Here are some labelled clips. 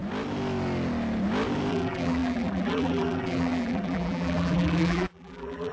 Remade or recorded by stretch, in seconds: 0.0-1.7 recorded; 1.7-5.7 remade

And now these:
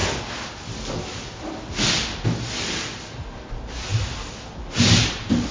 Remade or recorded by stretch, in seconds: 0.0-5.5 recorded

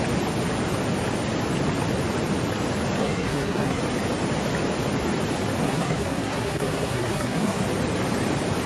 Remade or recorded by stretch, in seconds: 0.0-3.0 recorded; 3.0-3.8 remade; 3.8-5.6 recorded; 5.6-7.6 remade; 7.6-8.7 recorded

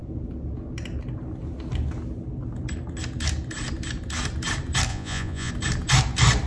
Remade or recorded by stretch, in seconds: 0.0-4.9 recorded; 4.9-5.5 remade; 5.5-6.5 recorded

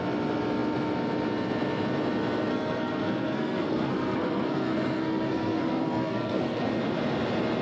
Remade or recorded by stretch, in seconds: 0.0-2.5 recorded; 2.5-6.7 remade; 6.7-7.6 recorded

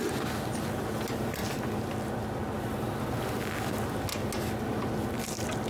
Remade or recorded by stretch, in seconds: 0.0-5.7 recorded

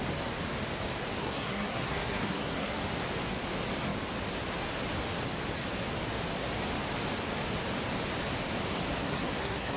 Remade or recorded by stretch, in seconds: 0.0-1.2 recorded; 1.2-2.8 remade; 2.8-9.0 recorded; 9.0-9.8 remade

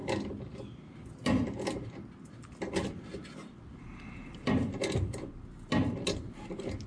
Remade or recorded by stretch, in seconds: 0.0-3.9 recorded; 3.9-4.7 remade; 4.7-6.9 recorded